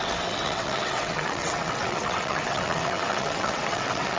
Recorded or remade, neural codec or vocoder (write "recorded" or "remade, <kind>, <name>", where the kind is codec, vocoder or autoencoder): remade, vocoder, WaveNeXt